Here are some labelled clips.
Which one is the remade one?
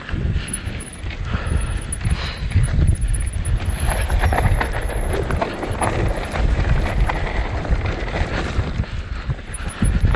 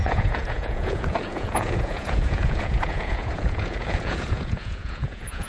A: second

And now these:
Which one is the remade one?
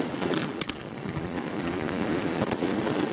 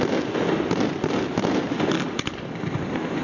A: first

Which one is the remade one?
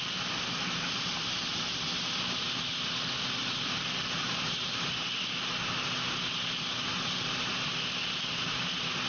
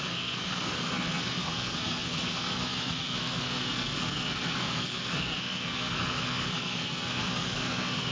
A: second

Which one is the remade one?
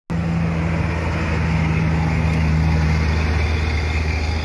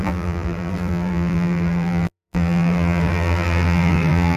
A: second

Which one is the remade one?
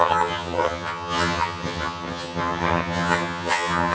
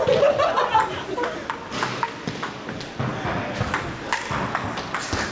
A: first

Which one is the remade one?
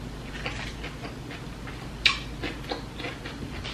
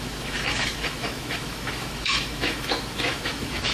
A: second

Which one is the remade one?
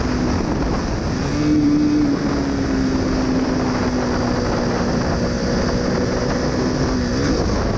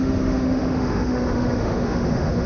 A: second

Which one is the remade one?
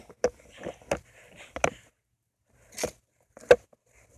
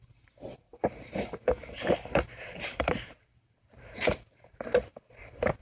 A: second